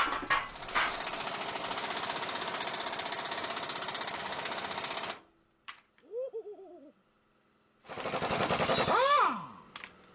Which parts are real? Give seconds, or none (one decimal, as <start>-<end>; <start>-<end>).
0.0-10.1